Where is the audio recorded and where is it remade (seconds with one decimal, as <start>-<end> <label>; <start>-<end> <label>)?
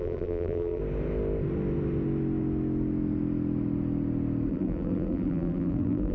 0.0-0.8 remade; 0.8-4.5 recorded; 4.5-6.1 remade